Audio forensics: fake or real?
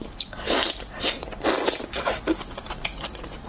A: real